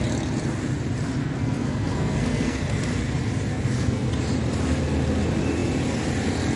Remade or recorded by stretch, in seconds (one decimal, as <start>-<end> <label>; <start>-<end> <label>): 0.0-1.2 recorded; 1.2-2.8 remade; 2.8-3.5 recorded; 3.5-4.1 remade; 4.1-6.6 recorded